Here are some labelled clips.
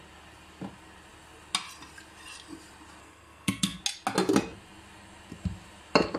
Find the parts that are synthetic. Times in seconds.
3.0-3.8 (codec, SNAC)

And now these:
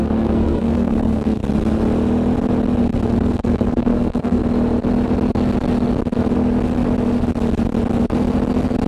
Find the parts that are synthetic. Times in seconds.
0.0-1.4 (codec, SNAC); 2.8-4.4

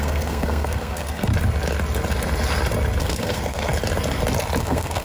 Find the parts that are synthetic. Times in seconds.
0.0-1.3 (codec, SNAC); 3.0-3.7; 4.6-5.0